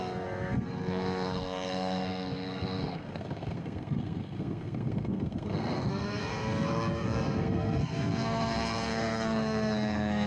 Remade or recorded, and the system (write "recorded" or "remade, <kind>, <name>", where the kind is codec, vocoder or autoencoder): remade, codec, SNAC